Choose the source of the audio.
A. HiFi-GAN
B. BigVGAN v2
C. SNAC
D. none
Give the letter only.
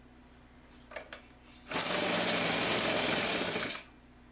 D